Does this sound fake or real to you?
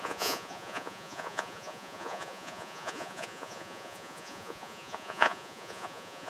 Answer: fake